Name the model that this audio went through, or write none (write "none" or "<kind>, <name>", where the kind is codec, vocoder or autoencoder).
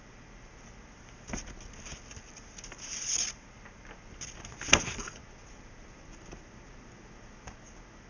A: none